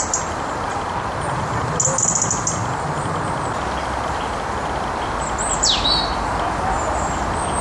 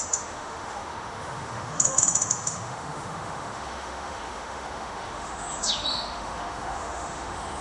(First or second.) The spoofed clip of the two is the second